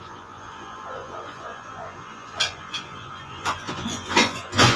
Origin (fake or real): fake